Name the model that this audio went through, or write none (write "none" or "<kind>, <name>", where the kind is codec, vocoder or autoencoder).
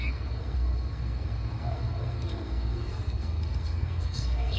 codec, SNAC